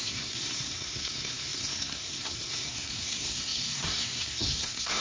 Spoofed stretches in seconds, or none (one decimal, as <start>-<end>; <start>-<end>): 0.0-5.0